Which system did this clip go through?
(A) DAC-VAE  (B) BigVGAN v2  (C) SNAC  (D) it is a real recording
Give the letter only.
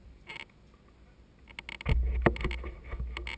D